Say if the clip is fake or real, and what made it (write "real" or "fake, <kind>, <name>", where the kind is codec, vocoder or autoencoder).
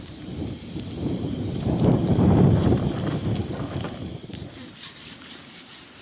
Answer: fake, vocoder, BigVGAN v2